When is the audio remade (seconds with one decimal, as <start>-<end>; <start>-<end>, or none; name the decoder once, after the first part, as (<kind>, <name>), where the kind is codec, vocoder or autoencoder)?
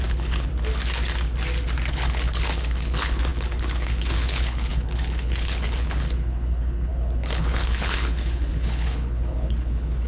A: 0.0-0.5 (codec, HILCodec); 1.9-10.1